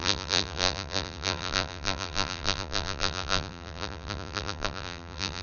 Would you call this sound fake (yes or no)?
yes